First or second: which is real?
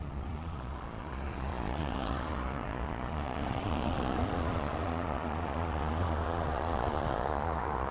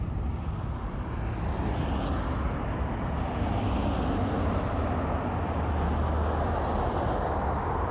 second